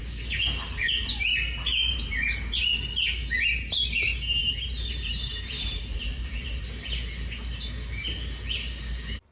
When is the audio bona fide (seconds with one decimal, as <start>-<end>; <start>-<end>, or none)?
0.0-1.8; 2.6-4.4; 6.6-9.3